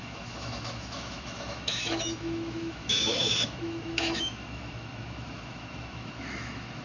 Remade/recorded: remade